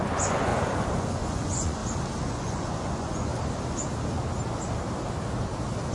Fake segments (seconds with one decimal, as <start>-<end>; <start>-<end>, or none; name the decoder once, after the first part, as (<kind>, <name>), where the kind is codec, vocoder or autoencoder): 0.0-0.5 (vocoder, Vocos); 1.0-1.8; 2.3-3.3